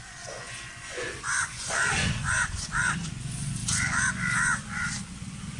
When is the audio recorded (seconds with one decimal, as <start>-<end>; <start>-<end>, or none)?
none